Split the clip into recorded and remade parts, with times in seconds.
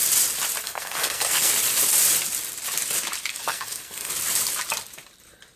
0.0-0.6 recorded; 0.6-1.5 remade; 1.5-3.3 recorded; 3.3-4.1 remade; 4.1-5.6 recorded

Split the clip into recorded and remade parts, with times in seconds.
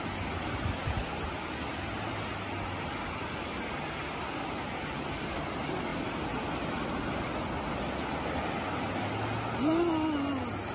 0.0-10.7 recorded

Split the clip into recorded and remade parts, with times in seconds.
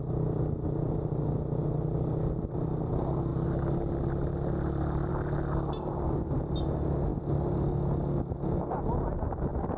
0.0-9.8 recorded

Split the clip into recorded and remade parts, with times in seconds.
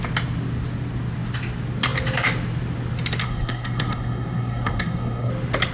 0.0-3.2 recorded; 3.2-5.3 remade; 5.3-5.7 recorded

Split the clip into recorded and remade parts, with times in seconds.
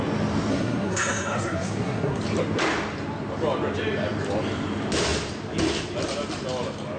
0.0-0.5 recorded; 0.5-2.2 remade; 2.2-7.0 recorded